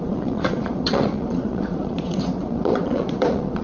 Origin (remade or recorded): remade